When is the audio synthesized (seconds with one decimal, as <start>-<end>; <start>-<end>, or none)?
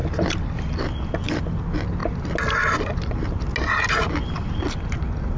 none